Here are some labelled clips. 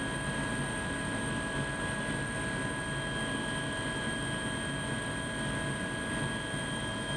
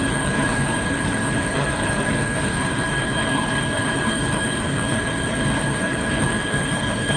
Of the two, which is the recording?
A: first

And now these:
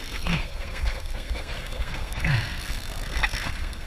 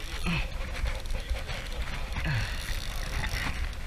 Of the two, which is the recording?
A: second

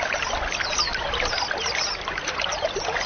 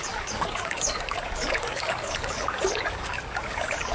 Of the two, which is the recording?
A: first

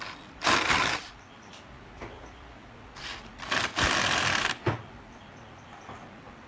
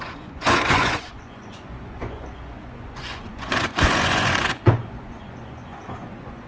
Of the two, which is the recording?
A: first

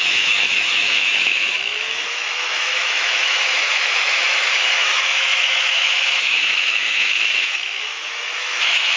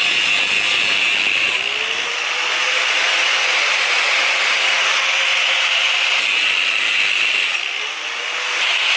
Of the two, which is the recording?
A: second